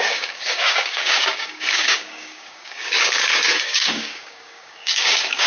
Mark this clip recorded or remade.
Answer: remade